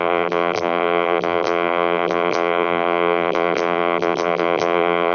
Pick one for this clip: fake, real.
fake